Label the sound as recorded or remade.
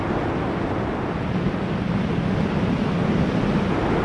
recorded